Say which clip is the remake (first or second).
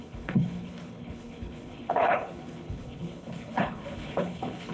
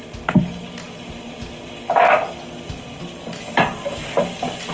first